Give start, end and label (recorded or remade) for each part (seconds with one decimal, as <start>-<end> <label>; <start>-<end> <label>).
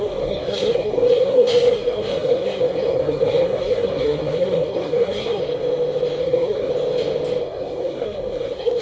0.0-5.4 remade; 5.4-6.2 recorded; 6.2-6.7 remade; 6.7-7.4 recorded; 7.4-8.8 remade